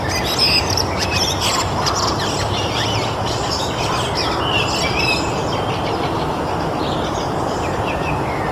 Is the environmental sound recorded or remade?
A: recorded